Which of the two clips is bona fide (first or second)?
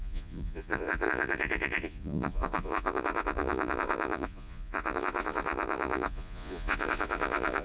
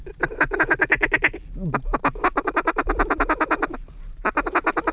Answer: second